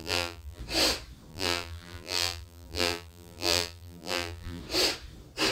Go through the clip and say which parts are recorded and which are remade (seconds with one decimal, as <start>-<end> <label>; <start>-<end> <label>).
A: 0.0-0.6 remade; 0.6-1.3 recorded; 1.3-4.6 remade; 4.6-5.5 recorded